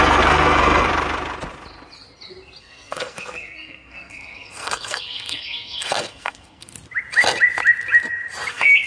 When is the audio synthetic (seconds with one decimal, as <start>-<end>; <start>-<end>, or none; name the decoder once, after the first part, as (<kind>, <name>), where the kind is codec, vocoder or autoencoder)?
0.0-0.9 (codec, SNAC); 2.6-6.7; 8.5-8.9